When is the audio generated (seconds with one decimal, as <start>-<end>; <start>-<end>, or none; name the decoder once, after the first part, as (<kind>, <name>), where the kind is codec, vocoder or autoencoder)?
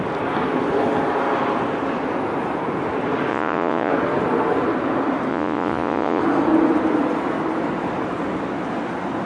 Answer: 3.3-3.9 (vocoder, Vocos); 5.3-6.2